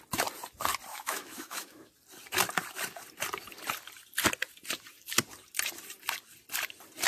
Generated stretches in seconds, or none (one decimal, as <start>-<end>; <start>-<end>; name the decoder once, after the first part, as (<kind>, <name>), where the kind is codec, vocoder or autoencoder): 0.9-1.9 (autoencoder, DAC-VAE)